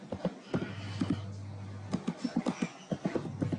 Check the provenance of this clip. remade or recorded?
recorded